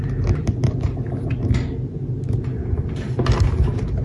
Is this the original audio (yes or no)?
yes